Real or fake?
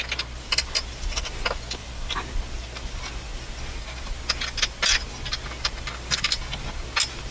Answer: real